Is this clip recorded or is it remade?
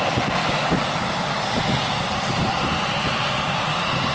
recorded